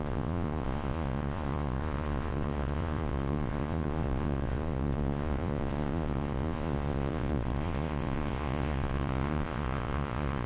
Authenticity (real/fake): fake